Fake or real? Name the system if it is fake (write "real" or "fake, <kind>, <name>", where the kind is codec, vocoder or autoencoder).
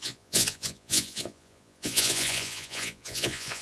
fake, vocoder, Vocos